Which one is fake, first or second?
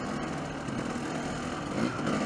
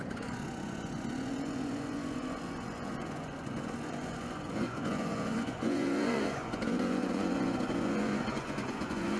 second